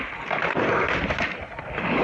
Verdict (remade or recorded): recorded